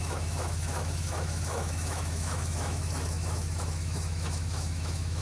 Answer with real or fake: fake